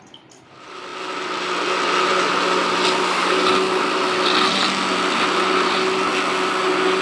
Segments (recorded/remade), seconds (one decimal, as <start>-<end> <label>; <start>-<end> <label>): 0.0-7.0 recorded